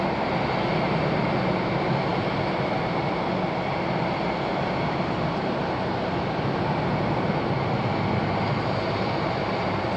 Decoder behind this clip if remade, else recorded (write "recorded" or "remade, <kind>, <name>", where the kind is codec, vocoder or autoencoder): recorded